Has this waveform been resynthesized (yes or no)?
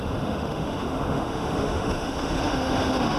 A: yes